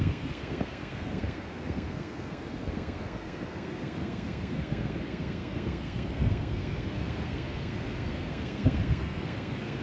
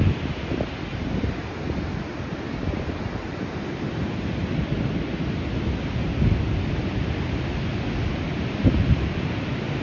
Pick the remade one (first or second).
first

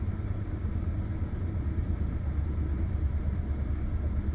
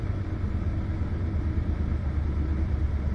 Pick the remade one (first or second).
first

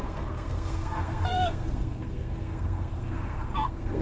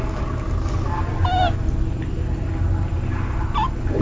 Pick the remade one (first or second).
first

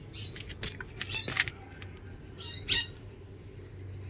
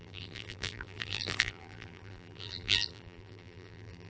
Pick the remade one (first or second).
second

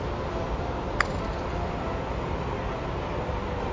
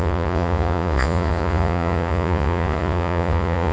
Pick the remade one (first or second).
second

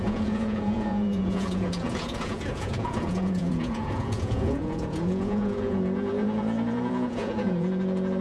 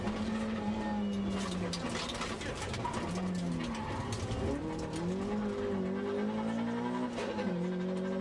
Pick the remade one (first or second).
first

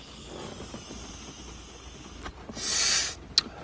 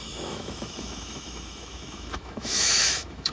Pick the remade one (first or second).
second